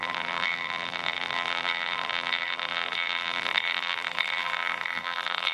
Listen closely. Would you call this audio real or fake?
fake